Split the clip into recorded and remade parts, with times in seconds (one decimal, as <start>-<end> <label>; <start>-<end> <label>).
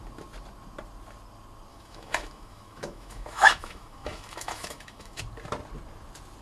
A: 0.0-1.7 recorded; 1.7-5.2 remade; 5.2-6.4 recorded